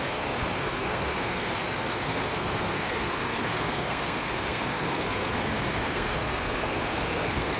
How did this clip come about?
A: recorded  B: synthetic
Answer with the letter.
B